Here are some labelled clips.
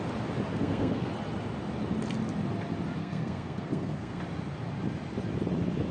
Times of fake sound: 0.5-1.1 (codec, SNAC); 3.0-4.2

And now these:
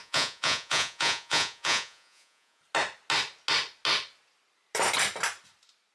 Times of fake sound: 0.0-2.6 (vocoder, Vocos)